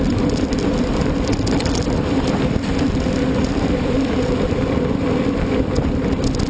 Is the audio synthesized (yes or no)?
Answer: no